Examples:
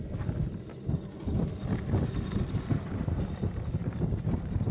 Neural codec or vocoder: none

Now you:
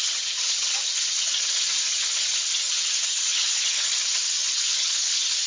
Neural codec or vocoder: vocoder, HiFi-GAN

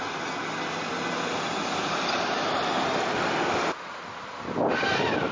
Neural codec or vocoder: none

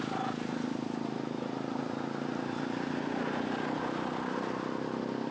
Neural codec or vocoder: none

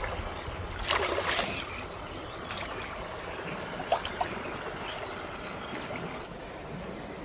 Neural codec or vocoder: none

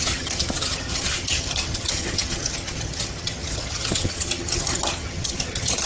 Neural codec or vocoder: vocoder, HiFi-GAN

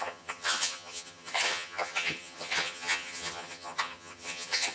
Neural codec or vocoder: vocoder, HiFi-GAN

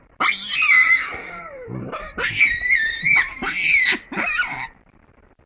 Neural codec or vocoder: none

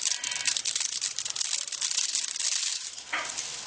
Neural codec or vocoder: none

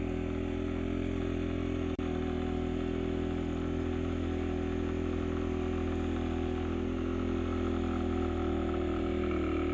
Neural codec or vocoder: none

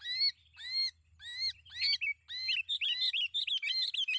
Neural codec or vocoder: none